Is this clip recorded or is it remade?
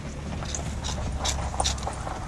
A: recorded